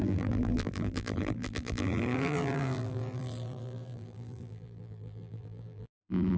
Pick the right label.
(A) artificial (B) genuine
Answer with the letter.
A